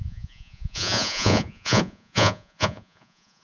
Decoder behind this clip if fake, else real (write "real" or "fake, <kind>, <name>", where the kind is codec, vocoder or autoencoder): fake, vocoder, Vocos